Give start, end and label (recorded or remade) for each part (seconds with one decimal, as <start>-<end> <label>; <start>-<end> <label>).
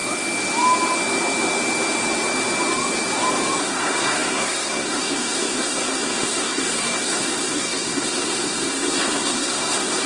0.0-3.6 recorded; 3.6-10.1 remade